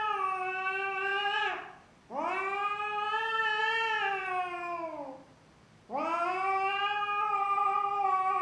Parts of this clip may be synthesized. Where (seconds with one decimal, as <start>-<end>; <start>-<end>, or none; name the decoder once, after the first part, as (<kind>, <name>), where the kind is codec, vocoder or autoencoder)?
none